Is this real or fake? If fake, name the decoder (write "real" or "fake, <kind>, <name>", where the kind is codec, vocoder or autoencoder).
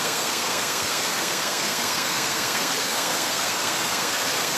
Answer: fake, codec, SNAC